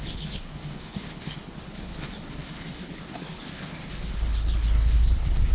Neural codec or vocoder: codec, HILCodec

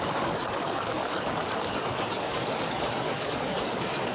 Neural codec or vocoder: codec, DAC